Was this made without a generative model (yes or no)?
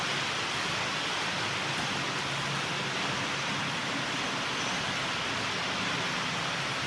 yes